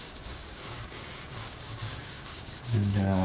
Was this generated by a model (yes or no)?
yes